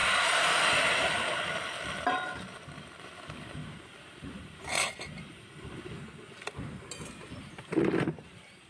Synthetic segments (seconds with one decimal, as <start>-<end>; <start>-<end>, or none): 2.5-3.6; 7.4-8.7